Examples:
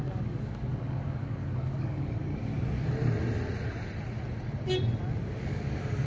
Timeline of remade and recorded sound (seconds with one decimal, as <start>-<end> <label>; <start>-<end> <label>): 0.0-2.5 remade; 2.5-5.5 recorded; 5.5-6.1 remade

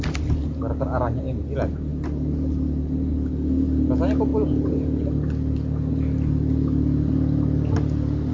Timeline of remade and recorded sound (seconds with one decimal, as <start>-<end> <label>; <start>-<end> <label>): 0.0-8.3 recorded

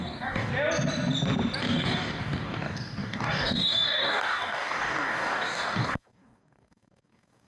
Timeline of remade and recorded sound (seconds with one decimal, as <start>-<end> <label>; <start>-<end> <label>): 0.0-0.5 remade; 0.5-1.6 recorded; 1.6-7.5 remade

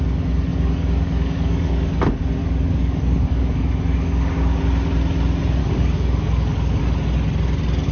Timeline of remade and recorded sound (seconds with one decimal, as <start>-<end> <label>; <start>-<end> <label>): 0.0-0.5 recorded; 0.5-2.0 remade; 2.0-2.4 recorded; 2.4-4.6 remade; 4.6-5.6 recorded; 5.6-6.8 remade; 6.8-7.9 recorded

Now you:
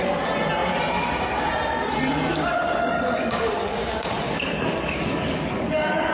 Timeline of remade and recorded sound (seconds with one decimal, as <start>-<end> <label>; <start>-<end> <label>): 0.0-2.3 recorded; 2.3-6.1 remade